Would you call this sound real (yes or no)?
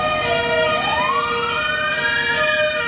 yes